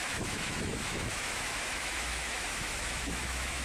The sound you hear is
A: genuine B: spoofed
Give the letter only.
B